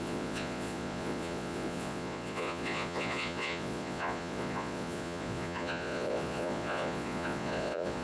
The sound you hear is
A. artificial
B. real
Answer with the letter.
A